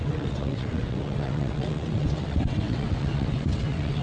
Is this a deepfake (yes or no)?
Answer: yes